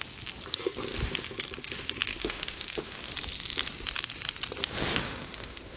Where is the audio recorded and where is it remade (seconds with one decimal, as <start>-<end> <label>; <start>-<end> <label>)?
0.0-2.1 recorded; 2.1-3.1 remade; 3.1-4.9 recorded; 4.9-5.8 remade